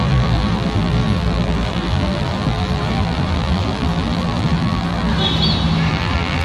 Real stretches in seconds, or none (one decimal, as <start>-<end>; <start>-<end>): 5.1-5.9